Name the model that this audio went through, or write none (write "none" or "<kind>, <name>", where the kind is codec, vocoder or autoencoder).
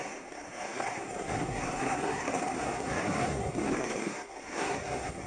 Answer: codec, SNAC